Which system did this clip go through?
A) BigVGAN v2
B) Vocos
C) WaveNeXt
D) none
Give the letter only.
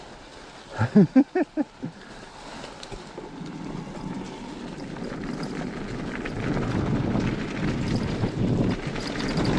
D